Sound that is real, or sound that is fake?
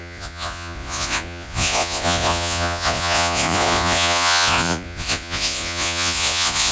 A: fake